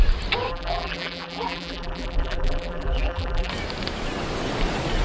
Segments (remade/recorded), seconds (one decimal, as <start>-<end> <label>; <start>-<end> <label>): 0.0-0.5 recorded; 0.5-3.5 remade; 3.5-5.0 recorded